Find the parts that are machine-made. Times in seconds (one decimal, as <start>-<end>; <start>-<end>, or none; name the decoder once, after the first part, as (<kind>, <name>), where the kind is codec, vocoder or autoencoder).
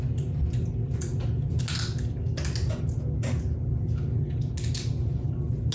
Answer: none